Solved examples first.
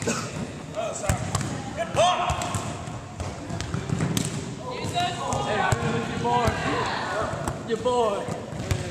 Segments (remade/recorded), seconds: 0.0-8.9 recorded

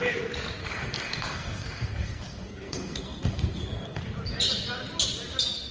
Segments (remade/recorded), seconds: 0.0-0.6 recorded; 0.6-4.0 remade; 4.0-5.7 recorded

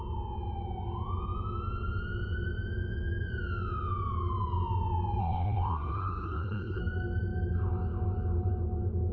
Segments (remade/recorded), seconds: 0.0-5.2 recorded; 5.2-6.8 remade; 6.8-9.1 recorded